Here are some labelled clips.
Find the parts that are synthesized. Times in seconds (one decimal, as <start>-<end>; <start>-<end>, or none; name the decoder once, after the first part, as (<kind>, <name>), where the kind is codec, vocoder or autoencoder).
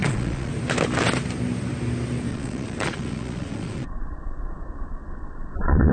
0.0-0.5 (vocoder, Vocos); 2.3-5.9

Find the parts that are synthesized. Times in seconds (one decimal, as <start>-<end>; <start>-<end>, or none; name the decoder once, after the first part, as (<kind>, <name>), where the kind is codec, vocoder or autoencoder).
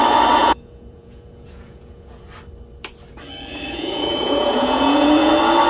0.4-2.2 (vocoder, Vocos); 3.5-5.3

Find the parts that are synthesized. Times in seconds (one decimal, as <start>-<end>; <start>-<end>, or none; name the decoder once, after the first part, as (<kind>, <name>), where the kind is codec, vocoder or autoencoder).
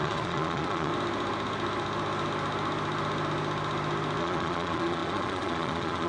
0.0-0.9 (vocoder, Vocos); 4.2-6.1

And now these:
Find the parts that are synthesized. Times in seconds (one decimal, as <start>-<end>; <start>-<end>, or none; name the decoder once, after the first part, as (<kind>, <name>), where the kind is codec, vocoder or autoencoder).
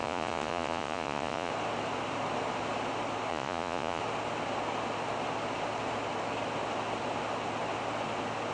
0.0-1.5 (vocoder, Vocos); 3.3-4.0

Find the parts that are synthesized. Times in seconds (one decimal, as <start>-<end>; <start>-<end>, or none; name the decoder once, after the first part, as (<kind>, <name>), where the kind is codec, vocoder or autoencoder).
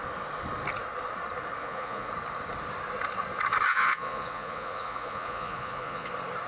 1.6-2.1 (vocoder, Vocos); 3.7-6.1